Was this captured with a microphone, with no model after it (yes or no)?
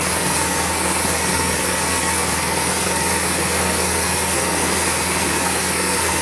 no